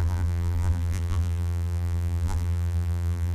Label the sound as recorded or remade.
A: remade